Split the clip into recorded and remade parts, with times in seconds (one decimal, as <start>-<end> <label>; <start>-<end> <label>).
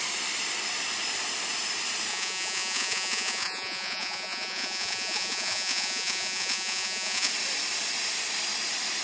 0.0-2.1 recorded; 2.1-7.3 remade; 7.3-9.0 recorded